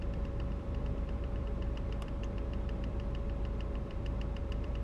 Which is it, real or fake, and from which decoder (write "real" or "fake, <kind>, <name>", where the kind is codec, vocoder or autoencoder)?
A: fake, vocoder, BigVGAN v2